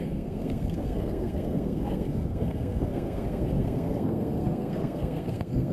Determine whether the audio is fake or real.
fake